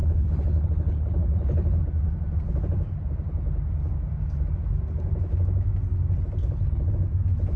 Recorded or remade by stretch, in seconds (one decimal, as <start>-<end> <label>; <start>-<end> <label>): 0.0-1.8 remade; 1.8-6.4 recorded; 6.4-6.9 remade; 6.9-7.6 recorded